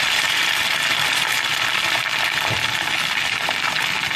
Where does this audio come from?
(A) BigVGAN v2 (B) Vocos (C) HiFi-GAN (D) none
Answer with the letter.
D